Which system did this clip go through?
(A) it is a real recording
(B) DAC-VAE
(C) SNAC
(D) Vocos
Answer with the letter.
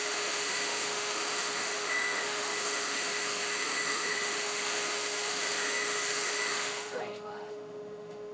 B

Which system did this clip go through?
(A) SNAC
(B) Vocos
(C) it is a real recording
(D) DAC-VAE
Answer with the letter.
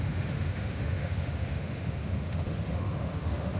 D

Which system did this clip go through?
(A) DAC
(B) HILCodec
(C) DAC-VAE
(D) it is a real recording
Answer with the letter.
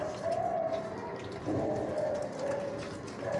D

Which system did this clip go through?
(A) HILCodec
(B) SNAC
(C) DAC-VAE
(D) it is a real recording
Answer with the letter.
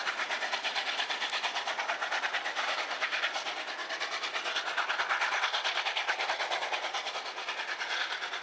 D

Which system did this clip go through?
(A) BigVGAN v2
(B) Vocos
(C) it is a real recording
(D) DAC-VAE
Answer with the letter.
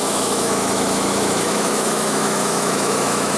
D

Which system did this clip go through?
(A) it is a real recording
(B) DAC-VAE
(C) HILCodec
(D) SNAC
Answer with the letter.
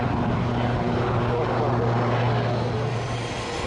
A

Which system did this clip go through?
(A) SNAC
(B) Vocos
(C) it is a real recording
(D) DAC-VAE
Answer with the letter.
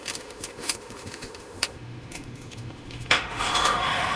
D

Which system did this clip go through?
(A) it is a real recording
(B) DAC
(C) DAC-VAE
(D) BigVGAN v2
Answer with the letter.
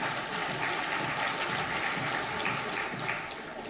A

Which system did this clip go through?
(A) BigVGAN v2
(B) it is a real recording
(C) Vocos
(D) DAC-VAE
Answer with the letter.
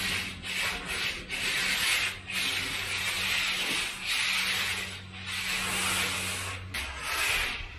B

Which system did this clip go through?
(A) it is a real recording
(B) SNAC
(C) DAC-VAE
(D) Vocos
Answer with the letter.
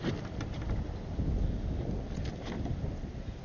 A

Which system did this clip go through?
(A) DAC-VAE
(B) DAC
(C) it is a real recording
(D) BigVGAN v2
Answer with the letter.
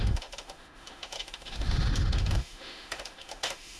A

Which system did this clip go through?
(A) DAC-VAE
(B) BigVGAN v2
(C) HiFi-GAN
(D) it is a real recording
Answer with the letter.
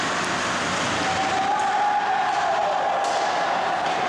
D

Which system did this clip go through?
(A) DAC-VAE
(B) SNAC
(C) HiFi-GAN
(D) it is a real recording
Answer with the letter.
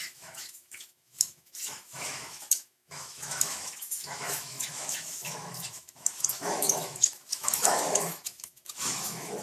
A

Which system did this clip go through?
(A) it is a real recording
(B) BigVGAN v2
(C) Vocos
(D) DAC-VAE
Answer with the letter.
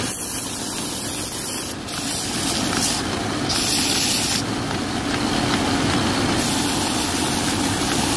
A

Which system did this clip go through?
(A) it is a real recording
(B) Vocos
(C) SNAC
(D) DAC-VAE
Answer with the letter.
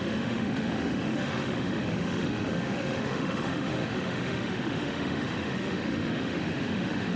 D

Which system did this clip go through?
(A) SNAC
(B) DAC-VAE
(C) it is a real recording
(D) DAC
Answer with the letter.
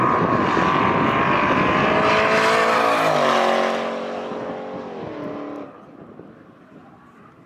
C